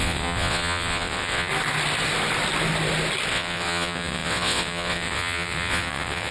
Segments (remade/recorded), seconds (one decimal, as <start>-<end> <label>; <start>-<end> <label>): 0.0-1.5 remade; 1.5-3.3 recorded; 3.3-6.3 remade